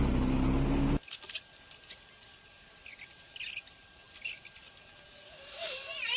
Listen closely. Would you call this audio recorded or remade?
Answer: recorded